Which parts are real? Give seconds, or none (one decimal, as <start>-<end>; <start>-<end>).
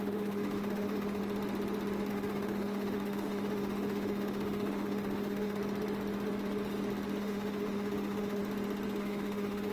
1.2-2.1; 5.6-7.2; 8.4-9.0